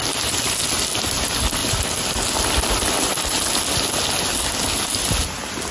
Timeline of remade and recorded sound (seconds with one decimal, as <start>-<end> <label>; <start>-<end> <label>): 0.0-5.7 recorded